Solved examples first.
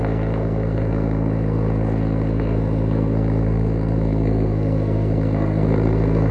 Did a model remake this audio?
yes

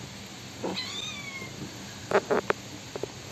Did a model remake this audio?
no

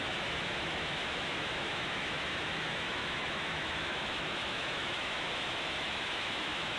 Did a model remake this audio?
yes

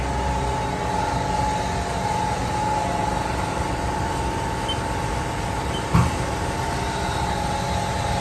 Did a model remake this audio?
no